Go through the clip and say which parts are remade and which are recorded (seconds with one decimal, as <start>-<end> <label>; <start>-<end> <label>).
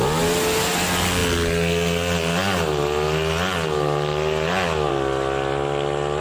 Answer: 0.0-6.2 recorded